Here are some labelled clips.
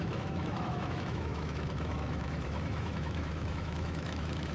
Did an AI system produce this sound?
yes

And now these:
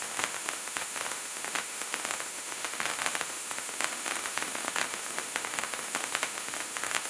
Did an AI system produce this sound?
yes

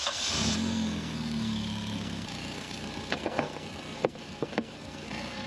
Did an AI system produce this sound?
yes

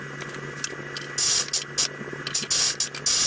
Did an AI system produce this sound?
no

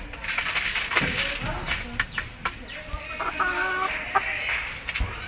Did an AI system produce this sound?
no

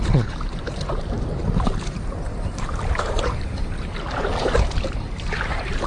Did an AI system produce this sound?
yes